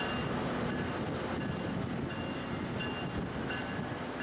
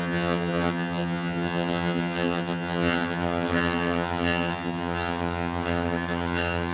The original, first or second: first